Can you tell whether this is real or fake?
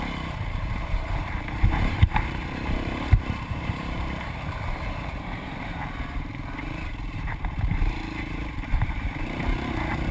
fake